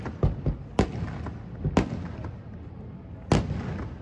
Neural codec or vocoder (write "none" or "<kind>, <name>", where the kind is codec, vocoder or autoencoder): none